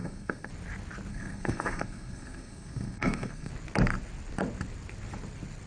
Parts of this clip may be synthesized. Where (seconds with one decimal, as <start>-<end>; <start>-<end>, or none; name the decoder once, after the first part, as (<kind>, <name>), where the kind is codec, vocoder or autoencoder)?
0.0-0.5 (codec, SNAC); 1.1-3.5